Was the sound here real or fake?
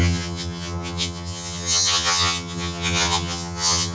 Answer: fake